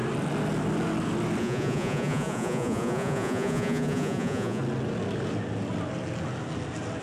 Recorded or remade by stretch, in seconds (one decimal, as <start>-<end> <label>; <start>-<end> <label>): 0.0-1.4 recorded; 1.4-4.6 remade; 4.6-7.0 recorded